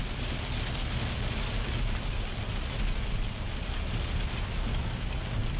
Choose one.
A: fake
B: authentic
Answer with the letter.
B